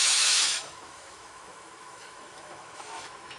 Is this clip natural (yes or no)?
no